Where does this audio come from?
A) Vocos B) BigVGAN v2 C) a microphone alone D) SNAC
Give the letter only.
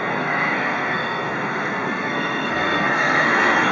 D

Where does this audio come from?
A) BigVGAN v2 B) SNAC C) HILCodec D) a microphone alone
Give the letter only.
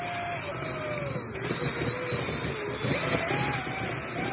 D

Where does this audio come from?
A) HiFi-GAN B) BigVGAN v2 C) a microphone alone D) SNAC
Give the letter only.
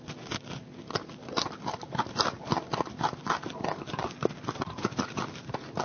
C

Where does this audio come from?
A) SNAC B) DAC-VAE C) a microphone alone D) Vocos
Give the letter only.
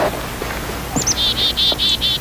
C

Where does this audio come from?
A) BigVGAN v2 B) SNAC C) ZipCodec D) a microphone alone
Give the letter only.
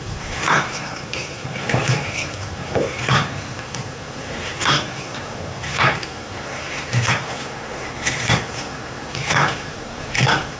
B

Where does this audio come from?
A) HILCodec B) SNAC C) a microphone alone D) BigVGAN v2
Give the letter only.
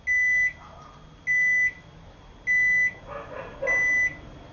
C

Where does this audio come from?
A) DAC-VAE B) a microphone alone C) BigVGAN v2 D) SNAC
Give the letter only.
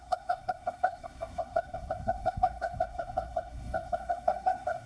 D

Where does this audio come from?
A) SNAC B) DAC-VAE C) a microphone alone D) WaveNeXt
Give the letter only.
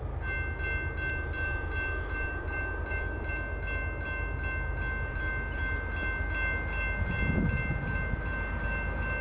C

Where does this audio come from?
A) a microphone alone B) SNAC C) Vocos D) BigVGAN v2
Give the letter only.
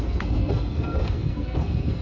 B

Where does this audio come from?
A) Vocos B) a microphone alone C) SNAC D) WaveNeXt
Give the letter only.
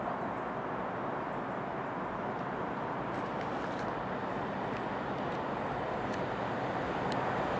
B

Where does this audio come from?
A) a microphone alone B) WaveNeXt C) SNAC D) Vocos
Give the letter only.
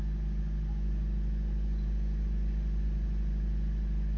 A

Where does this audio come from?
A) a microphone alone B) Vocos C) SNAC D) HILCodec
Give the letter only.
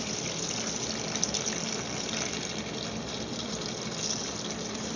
A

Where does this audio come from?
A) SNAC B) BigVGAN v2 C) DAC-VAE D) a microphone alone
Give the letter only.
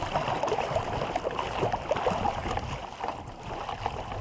D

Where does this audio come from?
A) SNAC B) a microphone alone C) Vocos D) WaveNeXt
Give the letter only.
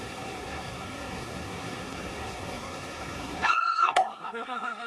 A